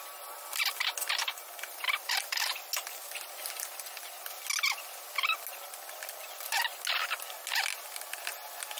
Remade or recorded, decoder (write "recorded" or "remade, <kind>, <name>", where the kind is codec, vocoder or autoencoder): recorded